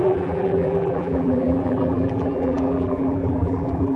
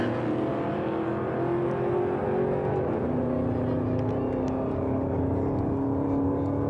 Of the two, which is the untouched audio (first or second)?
second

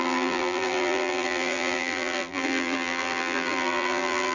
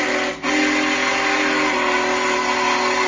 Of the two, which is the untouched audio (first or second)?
second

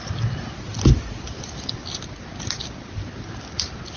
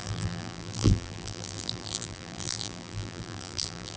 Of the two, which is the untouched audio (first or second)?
first